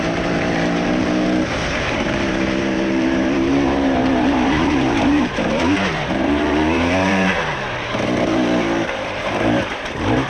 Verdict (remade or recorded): remade